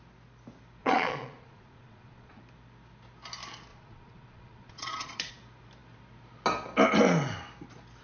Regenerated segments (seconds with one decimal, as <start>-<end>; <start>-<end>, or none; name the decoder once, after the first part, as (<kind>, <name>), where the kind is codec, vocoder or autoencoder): 0.8-2.4 (vocoder, Vocos); 3.7-5.3